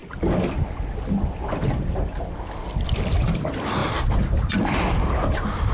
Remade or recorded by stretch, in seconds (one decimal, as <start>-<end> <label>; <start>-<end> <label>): 0.0-5.7 recorded